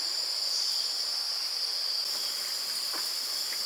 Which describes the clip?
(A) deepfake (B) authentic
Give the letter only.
B